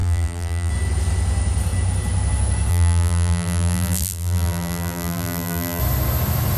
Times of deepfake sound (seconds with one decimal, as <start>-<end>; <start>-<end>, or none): 0.0-0.7; 2.7-5.8